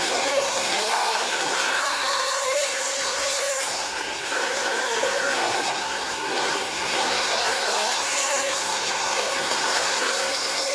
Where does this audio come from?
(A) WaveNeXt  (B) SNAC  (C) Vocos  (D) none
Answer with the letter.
B